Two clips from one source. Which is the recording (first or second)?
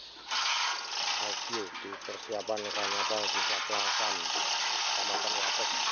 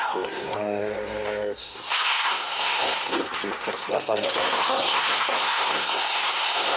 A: first